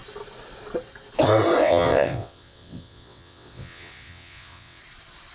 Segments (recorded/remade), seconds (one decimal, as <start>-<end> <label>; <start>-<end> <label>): 0.0-1.6 recorded; 1.6-4.8 remade; 4.8-5.3 recorded